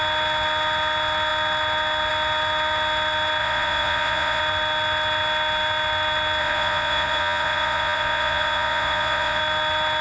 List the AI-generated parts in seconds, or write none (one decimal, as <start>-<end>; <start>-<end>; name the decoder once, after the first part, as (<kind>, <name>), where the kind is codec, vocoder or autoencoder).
3.4-4.4 (vocoder, Vocos); 6.4-9.4